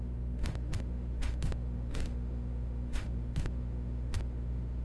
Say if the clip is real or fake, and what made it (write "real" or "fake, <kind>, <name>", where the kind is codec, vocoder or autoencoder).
fake, autoencoder, DAC-VAE